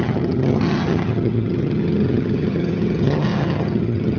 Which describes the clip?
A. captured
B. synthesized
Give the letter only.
B